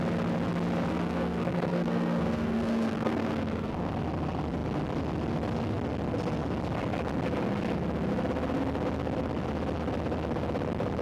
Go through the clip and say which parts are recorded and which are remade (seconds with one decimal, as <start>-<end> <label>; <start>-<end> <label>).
0.0-0.9 recorded; 0.9-3.9 remade; 3.9-11.0 recorded